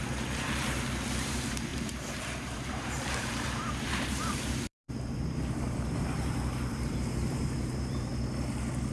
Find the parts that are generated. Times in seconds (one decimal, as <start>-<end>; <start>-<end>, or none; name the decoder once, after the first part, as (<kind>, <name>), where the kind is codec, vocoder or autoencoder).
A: 0.0-8.1 (vocoder, BigVGAN v2)